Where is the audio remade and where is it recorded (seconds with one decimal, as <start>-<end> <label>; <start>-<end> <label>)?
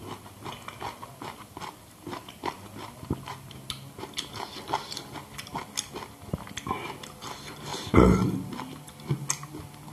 0.0-9.9 recorded